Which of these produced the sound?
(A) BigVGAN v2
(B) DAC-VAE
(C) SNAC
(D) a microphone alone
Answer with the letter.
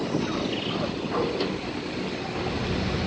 D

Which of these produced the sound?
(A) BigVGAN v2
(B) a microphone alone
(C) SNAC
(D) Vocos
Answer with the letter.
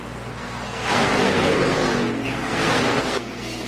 C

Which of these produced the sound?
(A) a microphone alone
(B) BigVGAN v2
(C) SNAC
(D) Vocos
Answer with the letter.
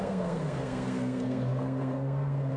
C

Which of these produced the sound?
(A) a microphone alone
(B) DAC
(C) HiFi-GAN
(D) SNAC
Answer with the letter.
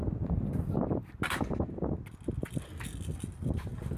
A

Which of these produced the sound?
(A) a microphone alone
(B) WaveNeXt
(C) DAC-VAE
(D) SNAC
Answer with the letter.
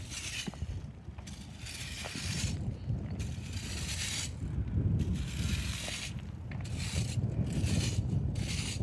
A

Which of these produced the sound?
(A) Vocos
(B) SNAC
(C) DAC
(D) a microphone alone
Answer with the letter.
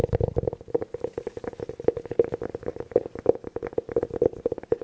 D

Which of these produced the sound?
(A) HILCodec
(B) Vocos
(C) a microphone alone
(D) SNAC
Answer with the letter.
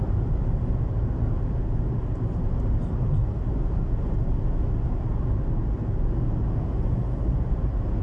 C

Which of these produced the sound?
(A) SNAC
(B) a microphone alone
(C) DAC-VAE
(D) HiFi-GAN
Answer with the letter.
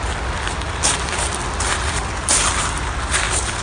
B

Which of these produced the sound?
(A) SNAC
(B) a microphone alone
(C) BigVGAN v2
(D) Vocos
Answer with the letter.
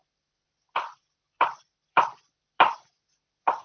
B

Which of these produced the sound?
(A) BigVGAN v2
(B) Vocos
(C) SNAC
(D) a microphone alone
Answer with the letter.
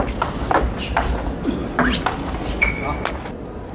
D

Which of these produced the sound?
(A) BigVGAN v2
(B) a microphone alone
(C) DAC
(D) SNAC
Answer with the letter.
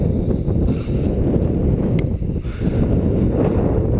B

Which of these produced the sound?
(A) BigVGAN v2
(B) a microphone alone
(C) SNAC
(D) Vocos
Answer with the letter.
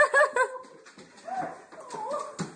B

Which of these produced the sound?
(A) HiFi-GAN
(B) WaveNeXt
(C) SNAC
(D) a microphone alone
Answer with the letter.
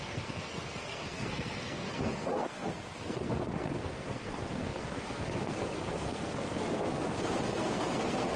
C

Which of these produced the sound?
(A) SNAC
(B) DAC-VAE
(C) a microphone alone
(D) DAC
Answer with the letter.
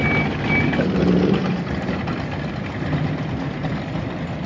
C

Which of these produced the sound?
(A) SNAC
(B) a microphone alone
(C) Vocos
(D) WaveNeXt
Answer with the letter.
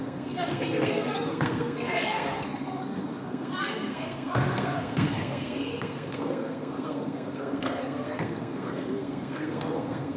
A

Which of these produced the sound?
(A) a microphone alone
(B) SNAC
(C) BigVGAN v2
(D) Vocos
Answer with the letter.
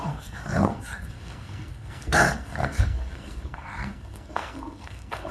B